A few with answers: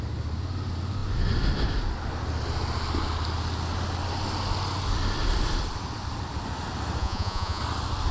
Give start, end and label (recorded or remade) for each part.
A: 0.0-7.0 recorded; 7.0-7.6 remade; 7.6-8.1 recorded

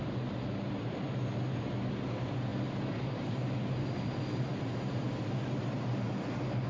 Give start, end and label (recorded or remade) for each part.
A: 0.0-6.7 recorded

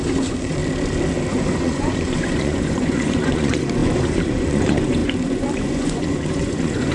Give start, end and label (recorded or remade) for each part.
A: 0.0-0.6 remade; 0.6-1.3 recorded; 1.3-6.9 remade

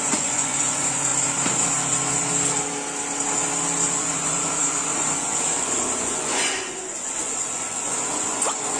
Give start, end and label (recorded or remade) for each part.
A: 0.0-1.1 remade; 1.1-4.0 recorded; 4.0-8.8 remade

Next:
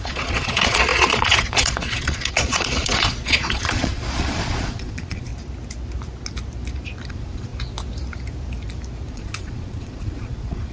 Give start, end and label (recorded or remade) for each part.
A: 0.0-5.3 remade; 5.3-7.1 recorded; 7.1-7.5 remade; 7.5-9.1 recorded; 9.1-10.7 remade

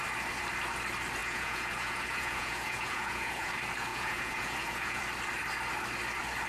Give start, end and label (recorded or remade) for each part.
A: 0.0-1.2 recorded; 1.2-3.5 remade; 3.5-3.9 recorded; 3.9-5.0 remade; 5.0-6.5 recorded

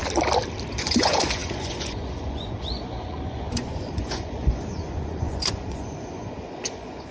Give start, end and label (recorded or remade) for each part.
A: 0.0-0.7 recorded; 0.7-7.1 remade